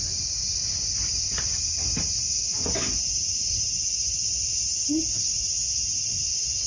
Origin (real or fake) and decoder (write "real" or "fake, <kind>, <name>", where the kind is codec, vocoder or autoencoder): real